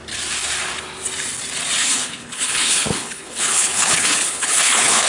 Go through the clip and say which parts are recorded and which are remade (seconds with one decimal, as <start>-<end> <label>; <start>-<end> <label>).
0.0-1.8 recorded; 1.8-5.1 remade